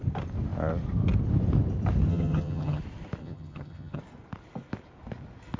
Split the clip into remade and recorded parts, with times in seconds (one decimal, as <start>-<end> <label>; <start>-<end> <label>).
0.0-2.1 recorded; 2.1-2.8 remade; 2.8-3.2 recorded; 3.2-4.0 remade; 4.0-5.6 recorded